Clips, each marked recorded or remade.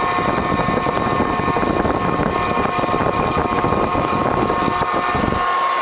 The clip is recorded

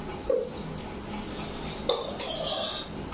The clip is recorded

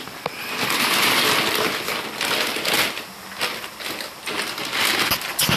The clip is recorded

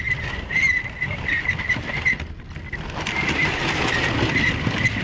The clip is recorded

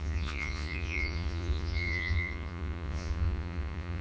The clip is remade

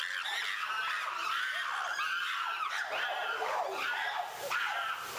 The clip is recorded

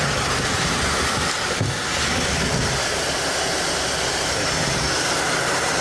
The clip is recorded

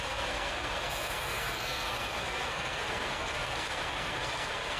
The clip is remade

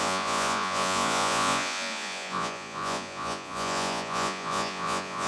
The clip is remade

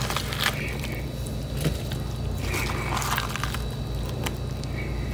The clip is recorded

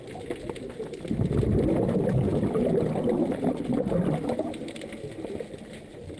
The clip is recorded